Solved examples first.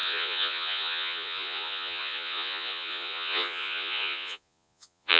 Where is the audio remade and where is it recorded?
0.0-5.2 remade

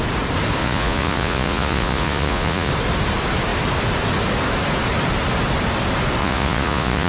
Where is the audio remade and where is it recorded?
0.0-0.6 recorded; 0.6-2.7 remade; 2.7-6.2 recorded; 6.2-7.1 remade